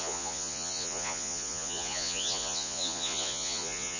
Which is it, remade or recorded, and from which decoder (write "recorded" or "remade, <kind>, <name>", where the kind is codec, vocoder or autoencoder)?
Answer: remade, vocoder, Vocos